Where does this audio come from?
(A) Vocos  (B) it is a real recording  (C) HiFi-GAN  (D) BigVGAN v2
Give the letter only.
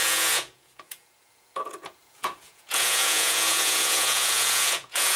A